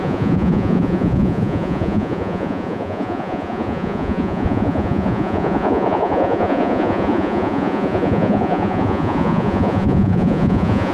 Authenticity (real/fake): fake